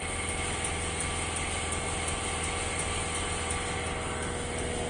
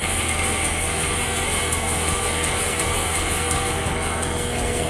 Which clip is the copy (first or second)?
second